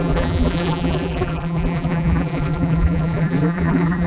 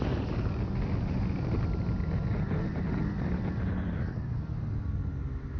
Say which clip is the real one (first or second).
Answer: second